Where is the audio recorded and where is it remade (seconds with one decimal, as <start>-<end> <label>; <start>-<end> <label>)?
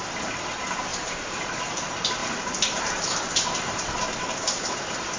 0.0-0.9 recorded; 0.9-1.6 remade; 1.6-2.2 recorded; 2.2-4.8 remade; 4.8-5.2 recorded